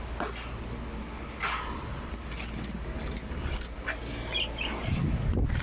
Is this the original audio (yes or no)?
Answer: yes